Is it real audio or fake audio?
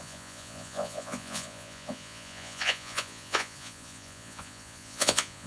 fake